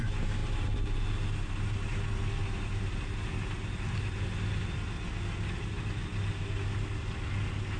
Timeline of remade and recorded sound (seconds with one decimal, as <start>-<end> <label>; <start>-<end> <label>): 0.0-7.8 recorded